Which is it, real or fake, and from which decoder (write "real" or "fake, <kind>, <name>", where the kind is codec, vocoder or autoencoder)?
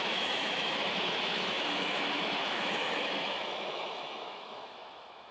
fake, autoencoder, DAC-VAE